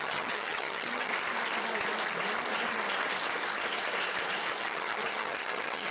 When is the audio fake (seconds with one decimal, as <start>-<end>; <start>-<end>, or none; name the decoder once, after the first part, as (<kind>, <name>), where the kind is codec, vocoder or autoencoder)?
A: 0.0-1.1 (vocoder, HiFi-GAN); 4.6-5.9